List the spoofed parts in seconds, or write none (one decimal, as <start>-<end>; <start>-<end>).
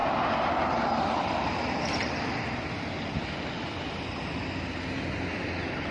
none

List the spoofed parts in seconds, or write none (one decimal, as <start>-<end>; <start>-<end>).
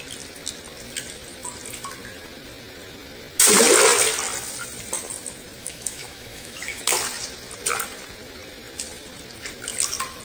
5.6-6.8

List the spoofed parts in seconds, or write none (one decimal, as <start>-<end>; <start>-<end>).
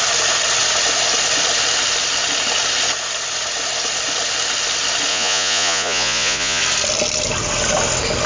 5.1-6.6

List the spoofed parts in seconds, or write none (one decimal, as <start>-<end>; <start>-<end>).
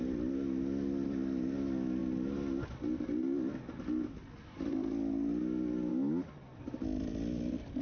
none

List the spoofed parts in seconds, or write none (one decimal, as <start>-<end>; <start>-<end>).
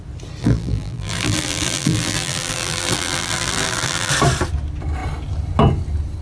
0.4-4.1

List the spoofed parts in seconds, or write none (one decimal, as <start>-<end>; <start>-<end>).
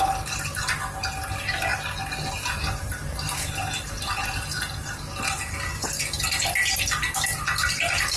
none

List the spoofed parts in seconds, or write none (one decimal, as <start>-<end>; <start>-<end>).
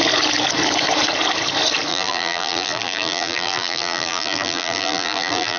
1.9-5.6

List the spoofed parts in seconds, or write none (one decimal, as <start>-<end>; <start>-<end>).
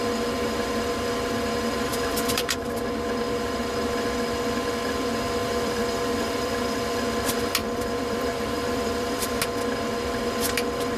1.9-2.7; 5.4-7.0; 7.6-9.4